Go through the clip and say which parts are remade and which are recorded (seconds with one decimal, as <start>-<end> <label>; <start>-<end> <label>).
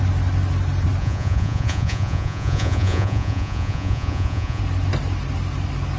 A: 0.0-1.0 recorded; 1.0-4.6 remade; 4.6-6.0 recorded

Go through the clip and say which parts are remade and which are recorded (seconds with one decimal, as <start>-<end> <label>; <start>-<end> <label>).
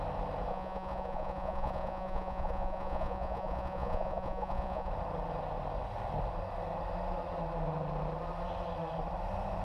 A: 0.0-0.5 recorded; 0.5-4.9 remade; 4.9-9.6 recorded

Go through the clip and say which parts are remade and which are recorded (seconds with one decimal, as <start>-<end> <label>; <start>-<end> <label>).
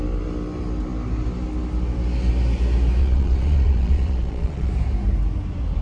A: 0.0-3.0 recorded; 3.0-4.7 remade; 4.7-5.8 recorded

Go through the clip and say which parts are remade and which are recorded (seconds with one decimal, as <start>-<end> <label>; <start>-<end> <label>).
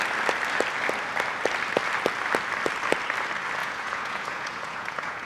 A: 0.0-3.6 recorded; 3.6-5.2 remade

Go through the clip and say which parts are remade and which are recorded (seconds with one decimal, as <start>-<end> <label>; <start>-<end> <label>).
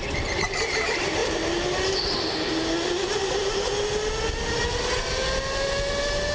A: 0.0-6.3 recorded